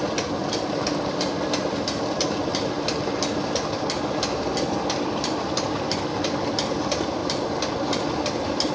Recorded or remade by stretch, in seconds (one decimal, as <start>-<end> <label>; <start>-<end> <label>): 0.0-8.7 recorded

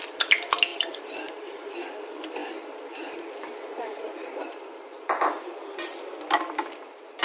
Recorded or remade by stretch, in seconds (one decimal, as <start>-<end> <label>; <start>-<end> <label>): 0.0-0.7 recorded; 0.7-1.4 remade; 1.4-2.4 recorded; 2.4-3.1 remade; 3.1-3.7 recorded; 3.7-5.3 remade; 5.3-7.2 recorded

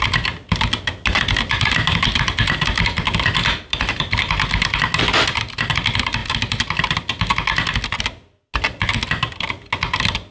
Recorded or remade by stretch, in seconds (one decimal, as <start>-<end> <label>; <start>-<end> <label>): 0.0-10.3 recorded

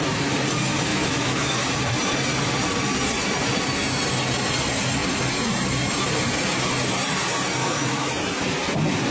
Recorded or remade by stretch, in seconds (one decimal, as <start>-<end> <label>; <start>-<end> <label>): 0.0-0.9 recorded; 0.9-1.7 remade; 1.7-7.6 recorded; 7.6-8.1 remade; 8.1-9.1 recorded

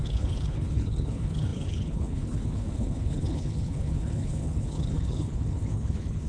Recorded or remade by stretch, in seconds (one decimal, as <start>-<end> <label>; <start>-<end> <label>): 0.0-6.3 remade

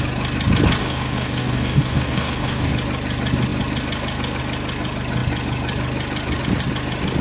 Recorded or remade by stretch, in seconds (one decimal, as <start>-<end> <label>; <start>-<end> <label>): 0.0-0.8 recorded; 0.8-2.7 remade; 2.7-7.2 recorded

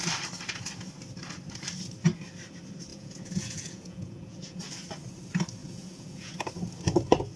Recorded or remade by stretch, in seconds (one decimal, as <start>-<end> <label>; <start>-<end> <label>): 0.0-2.9 recorded; 2.9-4.6 remade; 4.6-5.6 recorded; 5.6-6.3 remade; 6.3-7.4 recorded

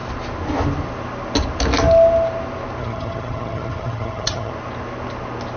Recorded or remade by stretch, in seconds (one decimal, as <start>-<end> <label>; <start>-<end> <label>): 0.0-2.8 recorded; 2.8-4.5 remade; 4.5-5.6 recorded